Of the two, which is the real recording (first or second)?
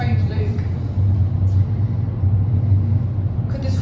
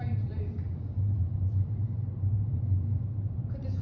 first